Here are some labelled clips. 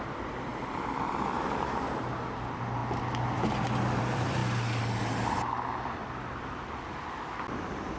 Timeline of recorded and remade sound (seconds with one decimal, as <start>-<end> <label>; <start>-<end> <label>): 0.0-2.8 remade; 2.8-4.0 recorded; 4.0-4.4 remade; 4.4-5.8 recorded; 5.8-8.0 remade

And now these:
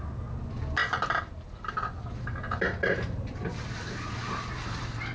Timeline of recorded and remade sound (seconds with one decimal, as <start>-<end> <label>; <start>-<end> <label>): 0.0-0.8 recorded; 0.8-1.7 remade; 1.7-5.1 recorded

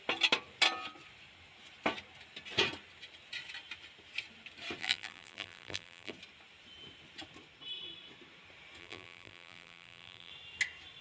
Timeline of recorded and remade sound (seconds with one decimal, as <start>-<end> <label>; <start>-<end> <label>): 0.0-4.8 recorded; 4.8-6.1 remade; 6.1-8.8 recorded; 8.8-10.3 remade; 10.3-11.0 recorded

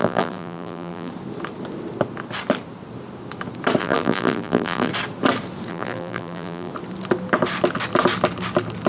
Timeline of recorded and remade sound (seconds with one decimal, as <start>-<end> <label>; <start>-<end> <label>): 0.0-1.1 remade; 1.1-3.8 recorded; 3.8-4.9 remade; 4.9-5.7 recorded; 5.7-6.7 remade; 6.7-8.9 recorded

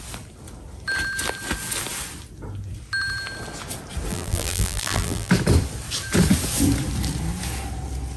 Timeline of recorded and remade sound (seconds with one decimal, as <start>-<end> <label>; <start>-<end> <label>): 0.0-4.1 recorded; 4.1-5.3 remade; 5.3-8.2 recorded

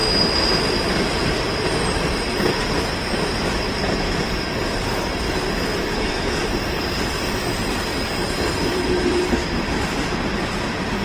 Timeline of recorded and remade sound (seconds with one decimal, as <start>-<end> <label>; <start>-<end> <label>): 0.0-3.3 recorded; 3.3-7.9 remade; 7.9-8.5 recorded; 8.5-11.0 remade

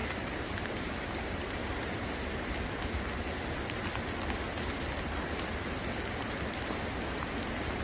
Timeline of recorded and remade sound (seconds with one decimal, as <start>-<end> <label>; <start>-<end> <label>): 0.0-2.5 remade; 2.5-7.8 recorded